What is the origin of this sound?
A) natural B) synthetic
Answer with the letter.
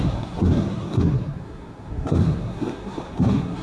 B